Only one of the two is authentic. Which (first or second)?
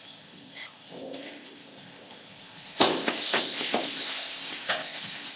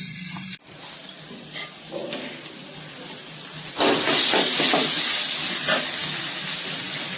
second